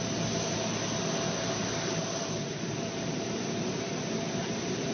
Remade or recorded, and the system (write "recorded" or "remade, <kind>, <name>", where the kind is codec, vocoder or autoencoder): recorded